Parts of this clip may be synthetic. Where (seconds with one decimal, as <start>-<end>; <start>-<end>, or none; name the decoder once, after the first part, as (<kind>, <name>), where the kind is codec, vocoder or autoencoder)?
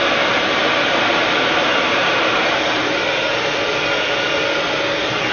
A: 0.6-2.9 (vocoder, BigVGAN v2)